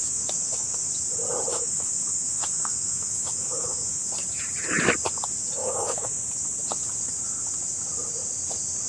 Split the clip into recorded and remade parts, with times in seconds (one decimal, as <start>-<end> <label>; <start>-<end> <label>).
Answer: 0.0-0.9 remade; 0.9-1.5 recorded; 1.5-4.0 remade; 4.0-5.6 recorded; 5.6-6.2 remade; 6.2-8.9 recorded